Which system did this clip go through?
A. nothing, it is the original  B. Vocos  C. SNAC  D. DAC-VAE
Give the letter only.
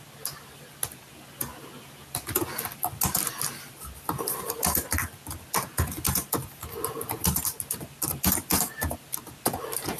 A